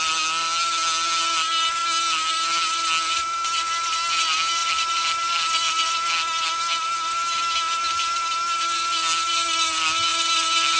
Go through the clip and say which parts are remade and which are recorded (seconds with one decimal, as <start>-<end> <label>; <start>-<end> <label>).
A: 0.0-10.8 recorded

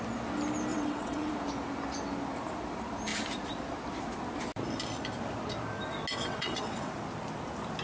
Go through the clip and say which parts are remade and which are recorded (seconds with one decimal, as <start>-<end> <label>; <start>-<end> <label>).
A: 0.0-0.7 recorded; 0.7-1.3 remade; 1.3-6.2 recorded; 6.2-6.9 remade; 6.9-7.8 recorded